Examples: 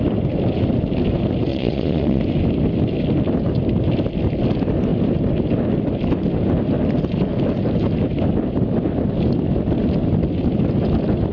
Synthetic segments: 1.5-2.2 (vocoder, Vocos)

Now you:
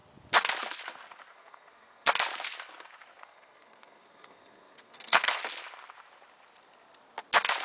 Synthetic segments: 1.3-2.1 (codec, SNAC); 3.2-5.4

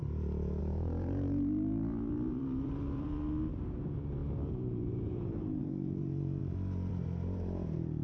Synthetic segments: 0.0-3.1 (vocoder, BigVGAN v2); 3.8-6.4; 6.9-8.0

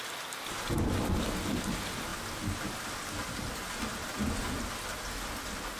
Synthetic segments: none

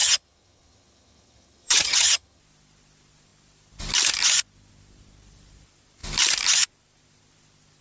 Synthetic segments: 0.0-2.4 (vocoder, HiFi-GAN)

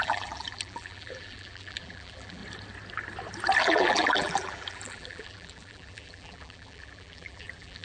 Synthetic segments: 0.0-2.4 (vocoder, BigVGAN v2); 3.6-7.8

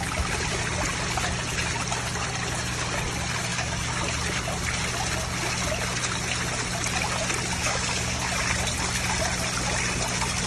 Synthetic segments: 3.5-4.0 (codec, DAC); 7.6-8.3

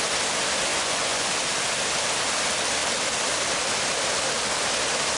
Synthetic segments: 0.7-1.3 (vocoder, Vocos)